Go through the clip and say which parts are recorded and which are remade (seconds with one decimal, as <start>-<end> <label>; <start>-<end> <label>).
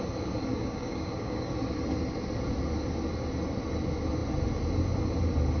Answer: 0.0-0.5 recorded; 0.5-1.5 remade; 1.5-5.6 recorded